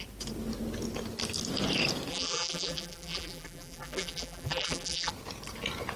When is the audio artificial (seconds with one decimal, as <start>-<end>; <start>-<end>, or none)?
2.1-5.1

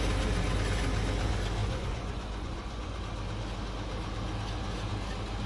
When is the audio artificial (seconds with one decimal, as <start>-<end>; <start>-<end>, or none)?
1.6-3.0

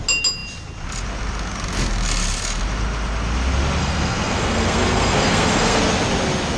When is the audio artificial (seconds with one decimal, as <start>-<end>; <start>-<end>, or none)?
3.8-5.8